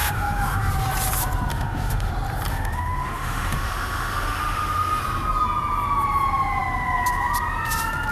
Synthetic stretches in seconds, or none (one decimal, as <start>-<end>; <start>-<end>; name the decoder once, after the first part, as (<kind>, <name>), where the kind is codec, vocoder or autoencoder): 0.0-0.7 (autoencoder, DAC-VAE); 1.5-2.1; 2.5-5.0